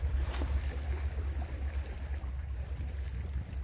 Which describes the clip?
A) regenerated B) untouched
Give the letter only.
B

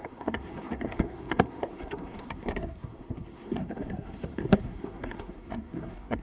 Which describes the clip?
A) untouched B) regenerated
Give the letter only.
B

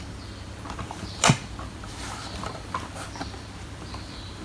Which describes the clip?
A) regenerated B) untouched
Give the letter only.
A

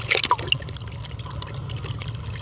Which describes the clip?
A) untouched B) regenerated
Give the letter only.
A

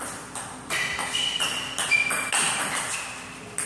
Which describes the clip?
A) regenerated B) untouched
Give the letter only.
B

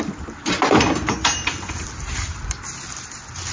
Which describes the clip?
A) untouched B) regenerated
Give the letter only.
A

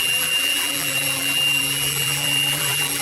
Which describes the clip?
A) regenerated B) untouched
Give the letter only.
A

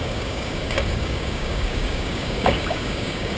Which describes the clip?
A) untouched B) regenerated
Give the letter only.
B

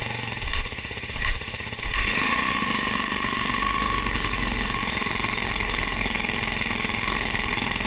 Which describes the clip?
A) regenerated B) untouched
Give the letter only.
A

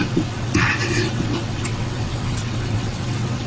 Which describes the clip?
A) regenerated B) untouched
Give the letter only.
A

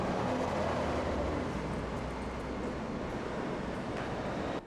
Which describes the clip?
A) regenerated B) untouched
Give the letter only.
B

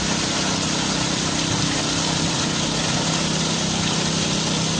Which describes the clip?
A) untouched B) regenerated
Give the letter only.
A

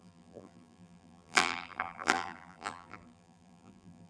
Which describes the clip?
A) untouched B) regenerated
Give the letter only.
B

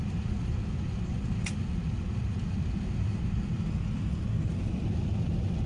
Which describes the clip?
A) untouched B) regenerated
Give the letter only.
A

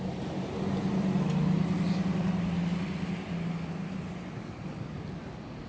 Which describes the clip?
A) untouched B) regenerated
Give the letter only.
A